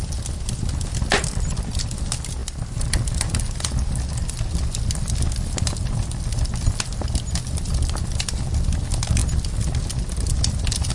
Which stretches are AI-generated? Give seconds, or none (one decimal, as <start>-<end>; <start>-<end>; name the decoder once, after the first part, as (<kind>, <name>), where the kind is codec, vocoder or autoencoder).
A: none